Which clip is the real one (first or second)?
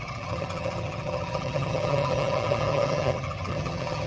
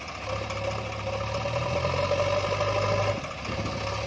second